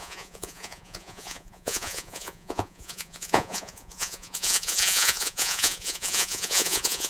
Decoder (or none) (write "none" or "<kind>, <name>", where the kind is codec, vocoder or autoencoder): vocoder, Vocos